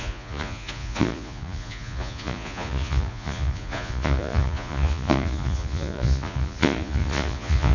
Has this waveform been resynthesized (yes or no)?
yes